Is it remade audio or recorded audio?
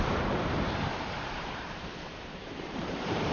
remade